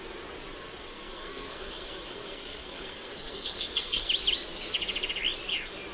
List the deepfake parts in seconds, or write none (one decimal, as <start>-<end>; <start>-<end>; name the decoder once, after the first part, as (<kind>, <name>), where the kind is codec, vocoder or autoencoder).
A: 0.8-4.1 (codec, SNAC)